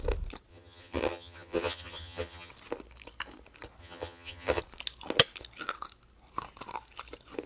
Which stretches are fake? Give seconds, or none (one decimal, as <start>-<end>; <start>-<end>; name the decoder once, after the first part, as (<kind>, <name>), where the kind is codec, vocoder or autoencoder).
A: 0.5-2.5 (vocoder, HiFi-GAN); 3.8-4.6